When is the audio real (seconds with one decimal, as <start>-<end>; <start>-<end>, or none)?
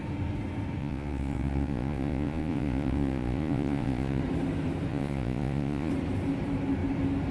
0.0-0.8; 4.2-4.9; 5.9-7.3